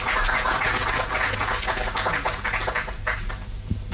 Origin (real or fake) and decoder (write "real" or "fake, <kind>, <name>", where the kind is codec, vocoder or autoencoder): real